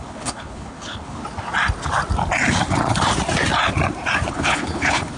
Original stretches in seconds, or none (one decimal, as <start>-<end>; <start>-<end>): 1.2-4.3